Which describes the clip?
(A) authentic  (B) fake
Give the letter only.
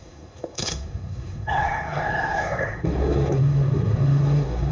B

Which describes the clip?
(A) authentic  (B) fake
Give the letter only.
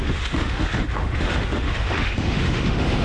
B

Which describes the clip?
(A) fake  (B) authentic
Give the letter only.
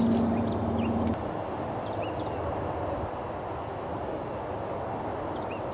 B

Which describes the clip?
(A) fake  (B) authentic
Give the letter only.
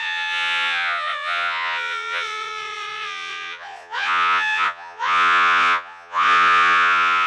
A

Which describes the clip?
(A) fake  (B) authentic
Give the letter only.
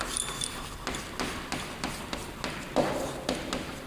B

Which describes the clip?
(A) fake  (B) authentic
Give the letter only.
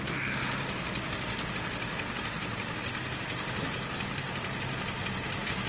B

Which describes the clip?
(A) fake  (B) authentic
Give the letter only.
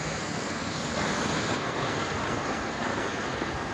A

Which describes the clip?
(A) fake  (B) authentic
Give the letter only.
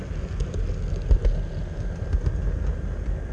B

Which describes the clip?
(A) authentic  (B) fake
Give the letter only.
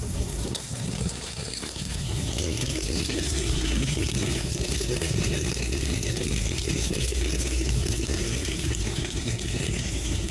B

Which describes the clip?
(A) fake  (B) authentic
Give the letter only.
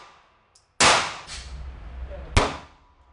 B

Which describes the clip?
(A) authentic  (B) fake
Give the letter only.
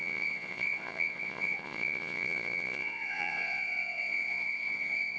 B